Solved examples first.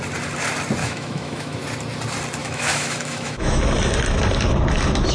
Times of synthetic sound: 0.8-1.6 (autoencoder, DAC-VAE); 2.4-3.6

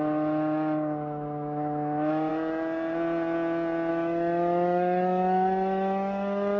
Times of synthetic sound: 0.0-2.3 (autoencoder, DAC-VAE); 3.9-6.6

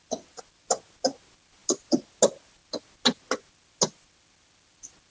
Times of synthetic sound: none